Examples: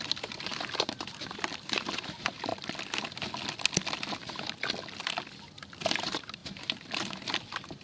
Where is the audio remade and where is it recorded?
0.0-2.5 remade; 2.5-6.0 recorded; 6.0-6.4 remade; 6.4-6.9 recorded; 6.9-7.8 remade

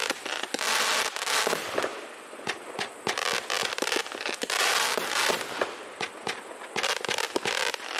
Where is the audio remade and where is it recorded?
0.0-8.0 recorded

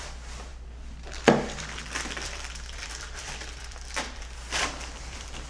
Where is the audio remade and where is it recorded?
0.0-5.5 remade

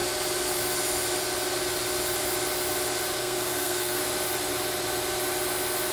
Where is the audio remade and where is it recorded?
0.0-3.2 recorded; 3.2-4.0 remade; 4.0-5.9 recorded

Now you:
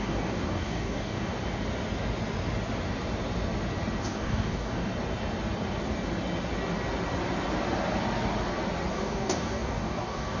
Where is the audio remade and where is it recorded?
0.0-1.3 remade; 1.3-4.0 recorded; 4.0-4.9 remade; 4.9-8.9 recorded; 8.9-10.4 remade